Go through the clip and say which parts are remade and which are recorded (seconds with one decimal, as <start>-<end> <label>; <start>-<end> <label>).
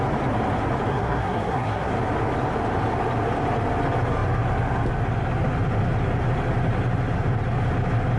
0.0-0.9 recorded; 0.9-1.9 remade; 1.9-8.2 recorded